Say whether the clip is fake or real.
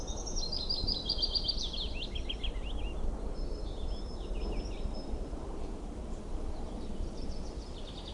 fake